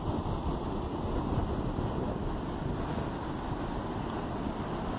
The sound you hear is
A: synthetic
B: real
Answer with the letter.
B